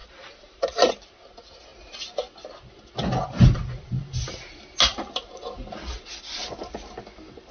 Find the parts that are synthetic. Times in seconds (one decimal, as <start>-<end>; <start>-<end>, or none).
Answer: 0.0-0.9